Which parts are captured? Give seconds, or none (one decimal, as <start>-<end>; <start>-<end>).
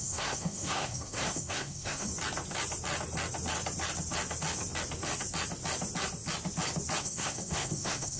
2.1-7.0